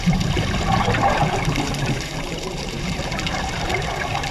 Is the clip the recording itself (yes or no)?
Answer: no